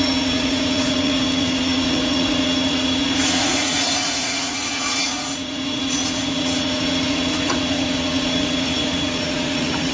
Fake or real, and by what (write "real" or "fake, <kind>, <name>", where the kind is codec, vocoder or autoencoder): fake, vocoder, Vocos